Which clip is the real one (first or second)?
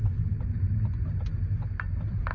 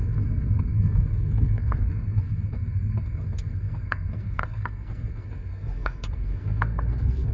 first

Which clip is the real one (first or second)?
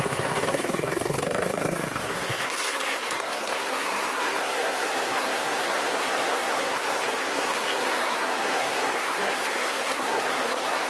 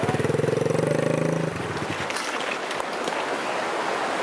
second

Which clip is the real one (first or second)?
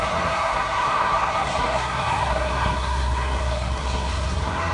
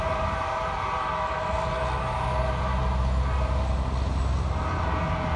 second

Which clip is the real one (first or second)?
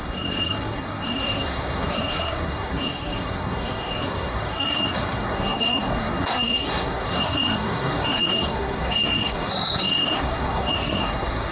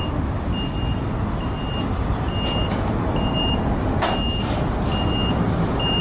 second